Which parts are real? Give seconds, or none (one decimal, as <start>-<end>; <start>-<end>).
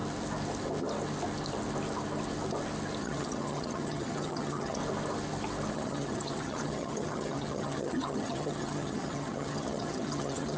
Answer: 0.0-3.0; 4.8-5.7